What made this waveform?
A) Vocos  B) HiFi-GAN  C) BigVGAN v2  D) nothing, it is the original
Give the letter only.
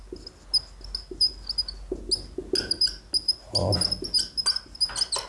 D